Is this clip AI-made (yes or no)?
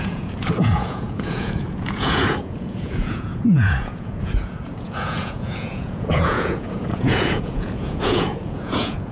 yes